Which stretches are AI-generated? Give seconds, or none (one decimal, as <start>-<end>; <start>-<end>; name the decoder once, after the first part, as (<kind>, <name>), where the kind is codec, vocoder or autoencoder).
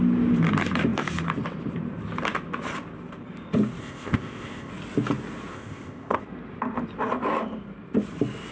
3.8-4.7 (codec, ZipCodec); 5.5-6.2